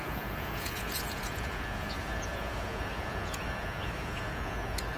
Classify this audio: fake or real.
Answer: fake